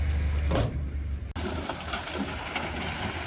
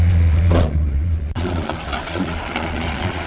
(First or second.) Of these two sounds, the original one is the first